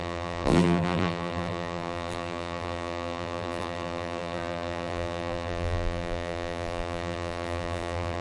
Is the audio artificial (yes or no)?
yes